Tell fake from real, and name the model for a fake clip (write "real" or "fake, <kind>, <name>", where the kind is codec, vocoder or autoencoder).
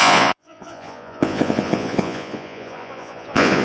fake, vocoder, Vocos